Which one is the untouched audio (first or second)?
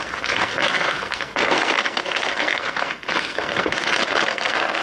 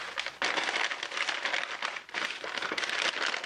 second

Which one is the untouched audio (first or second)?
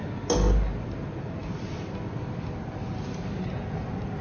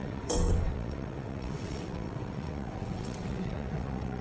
first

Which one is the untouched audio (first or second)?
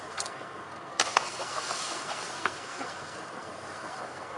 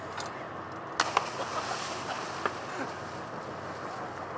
second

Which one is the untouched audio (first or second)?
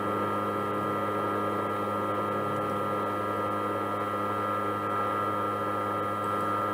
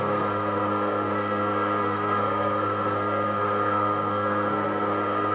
first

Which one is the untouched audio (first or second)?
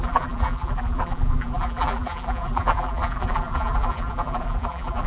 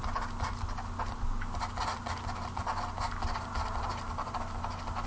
second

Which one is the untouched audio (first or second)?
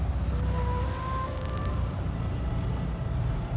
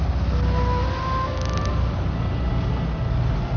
second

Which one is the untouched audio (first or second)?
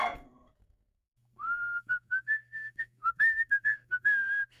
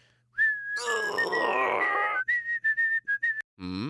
second